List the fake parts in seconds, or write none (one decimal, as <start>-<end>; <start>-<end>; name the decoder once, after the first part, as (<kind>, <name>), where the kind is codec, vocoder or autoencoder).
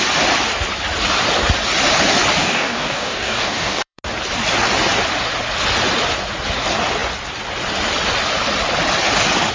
2.4-4.0 (codec, DAC)